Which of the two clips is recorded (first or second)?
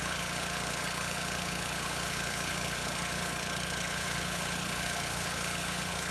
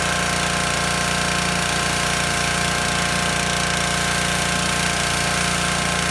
second